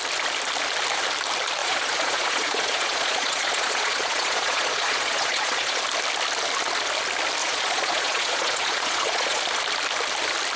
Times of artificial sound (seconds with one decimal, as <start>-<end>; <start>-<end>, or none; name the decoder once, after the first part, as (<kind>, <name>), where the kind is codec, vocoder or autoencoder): 1.6-5.8 (vocoder, Vocos); 7.4-9.4